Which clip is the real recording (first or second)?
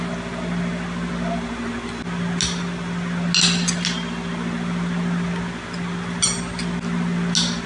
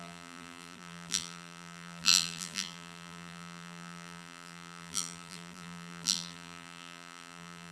first